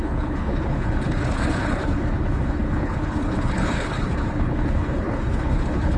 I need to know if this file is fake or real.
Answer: fake